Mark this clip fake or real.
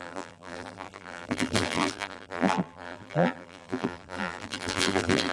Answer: fake